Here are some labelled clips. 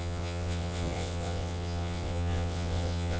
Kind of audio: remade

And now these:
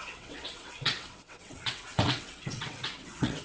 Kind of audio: remade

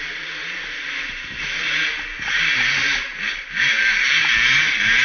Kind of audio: recorded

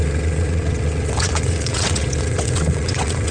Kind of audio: remade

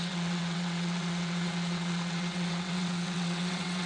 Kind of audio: remade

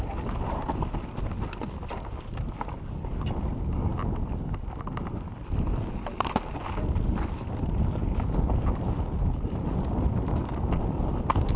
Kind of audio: recorded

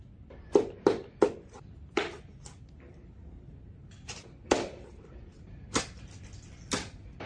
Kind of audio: recorded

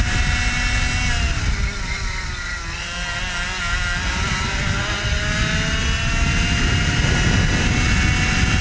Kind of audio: recorded